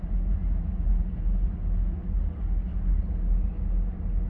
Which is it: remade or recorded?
recorded